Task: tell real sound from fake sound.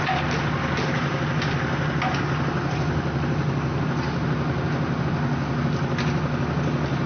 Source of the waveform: real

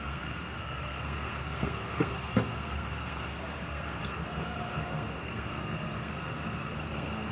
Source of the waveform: fake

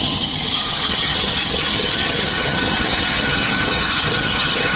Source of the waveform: fake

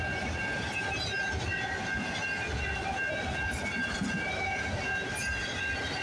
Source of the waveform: real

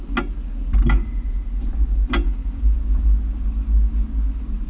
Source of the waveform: real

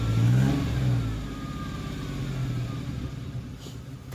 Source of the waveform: real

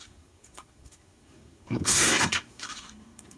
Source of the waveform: fake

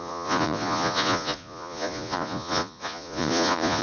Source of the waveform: fake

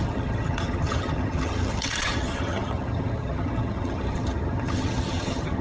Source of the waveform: fake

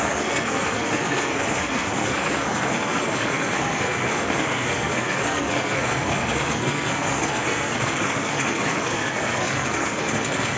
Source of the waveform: fake